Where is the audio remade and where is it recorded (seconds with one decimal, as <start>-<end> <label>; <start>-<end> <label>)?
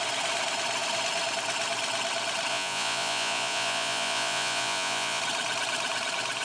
0.0-2.5 recorded; 2.5-5.2 remade; 5.2-6.4 recorded